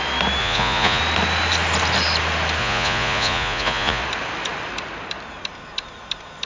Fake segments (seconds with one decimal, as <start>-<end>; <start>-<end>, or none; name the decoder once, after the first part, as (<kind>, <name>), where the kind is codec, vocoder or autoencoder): 0.4-1.0 (vocoder, Vocos); 2.6-4.0

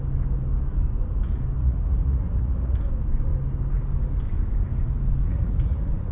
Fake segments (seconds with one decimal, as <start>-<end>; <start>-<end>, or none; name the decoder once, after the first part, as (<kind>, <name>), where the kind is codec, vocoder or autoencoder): 1.6-2.8 (vocoder, Vocos); 5.2-6.1

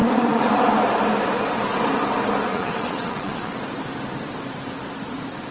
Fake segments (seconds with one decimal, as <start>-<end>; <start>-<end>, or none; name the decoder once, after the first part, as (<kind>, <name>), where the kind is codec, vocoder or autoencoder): 0.0-0.5 (vocoder, Vocos); 2.5-3.5

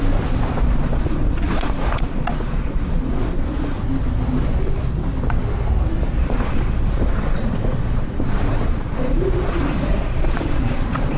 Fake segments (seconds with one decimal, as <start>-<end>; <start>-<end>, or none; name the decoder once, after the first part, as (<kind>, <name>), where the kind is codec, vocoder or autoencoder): 0.5-3.8 (vocoder, Vocos); 6.2-11.2